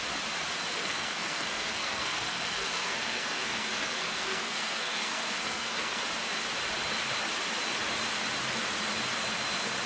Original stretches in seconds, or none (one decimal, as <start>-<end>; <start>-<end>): 0.0-0.7; 6.0-9.9